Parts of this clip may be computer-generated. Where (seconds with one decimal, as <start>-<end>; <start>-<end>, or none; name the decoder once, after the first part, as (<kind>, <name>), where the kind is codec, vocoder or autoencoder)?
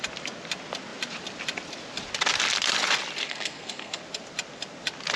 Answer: 3.2-4.0 (codec, SNAC)